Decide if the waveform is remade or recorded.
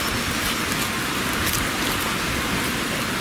recorded